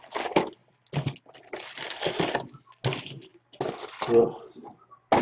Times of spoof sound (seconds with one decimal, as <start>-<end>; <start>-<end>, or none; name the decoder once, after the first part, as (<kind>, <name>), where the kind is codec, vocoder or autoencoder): none